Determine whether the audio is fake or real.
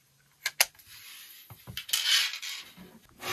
real